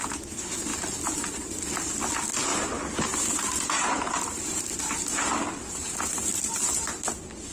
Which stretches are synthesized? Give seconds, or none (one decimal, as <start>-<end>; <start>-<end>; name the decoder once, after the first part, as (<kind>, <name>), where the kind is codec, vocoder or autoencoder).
2.5-4.6 (vocoder, BigVGAN v2); 5.8-7.0